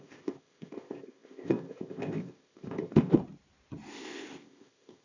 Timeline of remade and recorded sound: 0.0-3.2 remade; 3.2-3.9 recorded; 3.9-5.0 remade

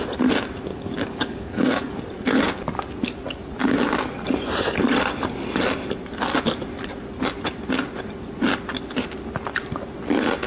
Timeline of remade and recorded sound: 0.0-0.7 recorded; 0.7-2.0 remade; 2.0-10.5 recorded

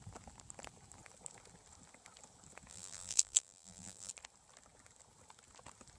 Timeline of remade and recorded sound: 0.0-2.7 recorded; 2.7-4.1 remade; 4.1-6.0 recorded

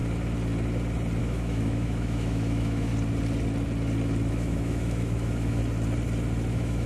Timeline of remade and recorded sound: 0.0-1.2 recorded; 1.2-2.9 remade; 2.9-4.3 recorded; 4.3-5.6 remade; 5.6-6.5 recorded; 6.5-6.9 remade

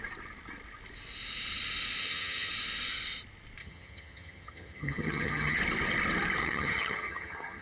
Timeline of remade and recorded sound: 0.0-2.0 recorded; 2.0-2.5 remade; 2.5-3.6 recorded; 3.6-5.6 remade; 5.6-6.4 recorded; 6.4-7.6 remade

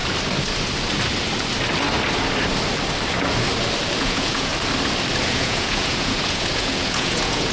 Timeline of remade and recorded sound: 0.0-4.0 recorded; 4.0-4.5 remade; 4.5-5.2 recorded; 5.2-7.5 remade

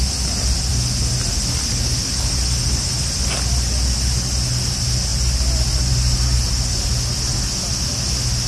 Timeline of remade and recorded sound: 0.0-8.5 recorded